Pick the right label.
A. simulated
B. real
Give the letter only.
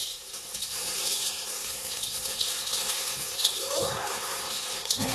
A